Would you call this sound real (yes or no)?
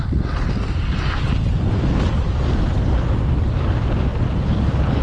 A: yes